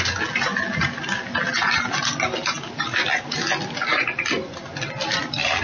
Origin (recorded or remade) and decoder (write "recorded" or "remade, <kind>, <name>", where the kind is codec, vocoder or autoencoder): recorded